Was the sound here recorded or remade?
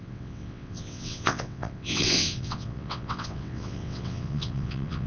remade